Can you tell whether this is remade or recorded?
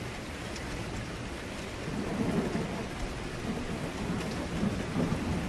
recorded